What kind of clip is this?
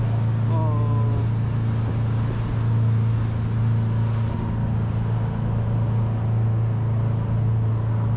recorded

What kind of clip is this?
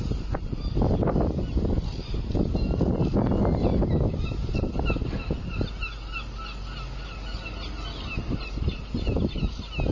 recorded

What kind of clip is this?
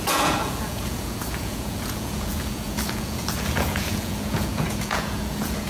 remade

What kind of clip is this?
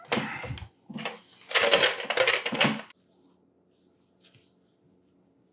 recorded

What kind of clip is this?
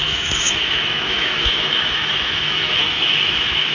remade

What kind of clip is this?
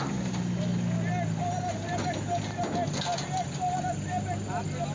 recorded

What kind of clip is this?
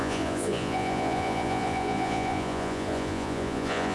remade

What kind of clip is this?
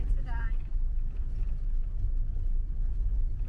recorded